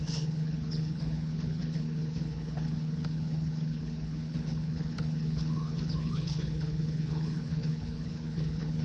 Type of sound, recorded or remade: remade